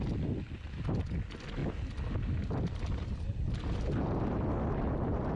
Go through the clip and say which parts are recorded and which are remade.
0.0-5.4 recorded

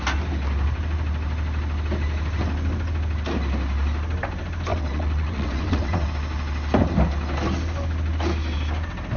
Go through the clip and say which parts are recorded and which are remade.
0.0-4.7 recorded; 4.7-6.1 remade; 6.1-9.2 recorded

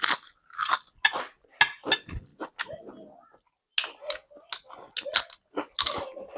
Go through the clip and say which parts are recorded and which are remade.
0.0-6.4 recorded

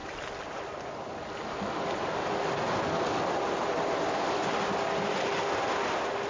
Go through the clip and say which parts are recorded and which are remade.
0.0-6.3 recorded

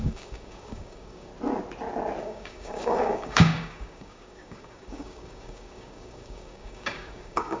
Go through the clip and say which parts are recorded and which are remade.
0.0-1.3 remade; 1.3-2.2 recorded; 2.2-7.6 remade